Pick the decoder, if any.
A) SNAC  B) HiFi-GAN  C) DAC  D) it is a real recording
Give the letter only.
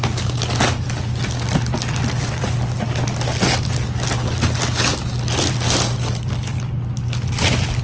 D